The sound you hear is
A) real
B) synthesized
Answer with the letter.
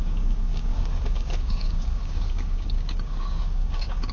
B